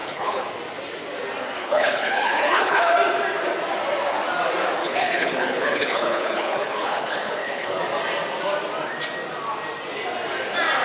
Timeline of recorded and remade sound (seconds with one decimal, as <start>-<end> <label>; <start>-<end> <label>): 0.0-0.5 remade; 0.5-1.6 recorded; 1.6-2.9 remade; 2.9-4.8 recorded; 4.8-7.8 remade; 7.8-10.8 recorded